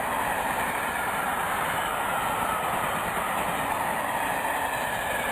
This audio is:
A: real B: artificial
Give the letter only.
A